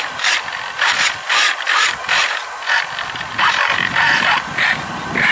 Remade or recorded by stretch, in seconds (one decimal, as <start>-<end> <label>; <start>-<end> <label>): 0.0-5.3 recorded